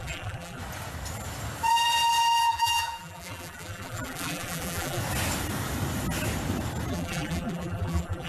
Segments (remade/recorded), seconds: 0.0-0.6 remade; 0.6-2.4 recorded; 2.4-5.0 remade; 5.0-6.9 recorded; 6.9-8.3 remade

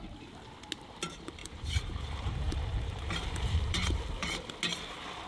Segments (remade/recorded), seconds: 0.0-1.4 recorded; 1.4-4.5 remade; 4.5-5.3 recorded

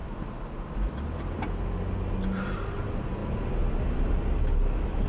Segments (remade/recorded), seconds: 0.0-1.2 remade; 1.2-5.1 recorded